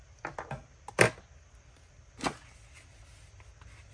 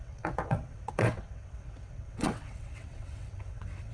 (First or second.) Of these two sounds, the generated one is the second